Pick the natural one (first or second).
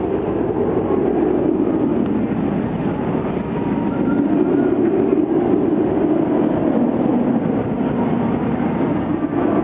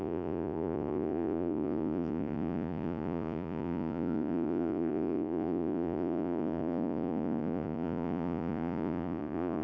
first